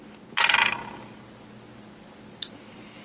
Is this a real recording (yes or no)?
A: yes